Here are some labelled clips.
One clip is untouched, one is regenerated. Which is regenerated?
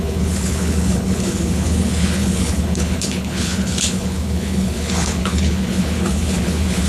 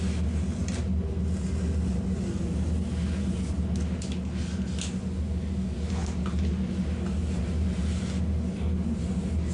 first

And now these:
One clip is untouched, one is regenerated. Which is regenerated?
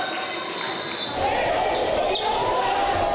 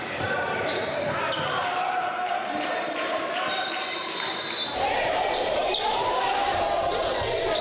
second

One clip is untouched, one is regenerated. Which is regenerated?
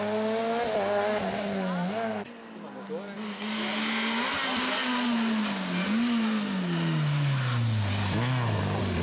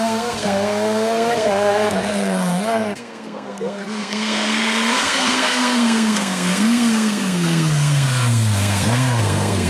second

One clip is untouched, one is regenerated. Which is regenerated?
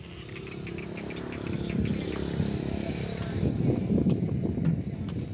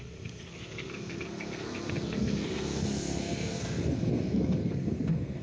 second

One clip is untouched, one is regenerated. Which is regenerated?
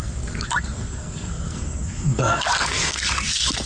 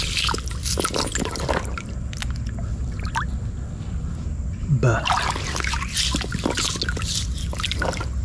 first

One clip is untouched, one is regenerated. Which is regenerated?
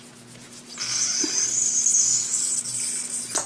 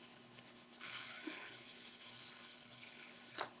second